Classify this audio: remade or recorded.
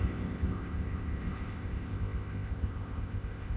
remade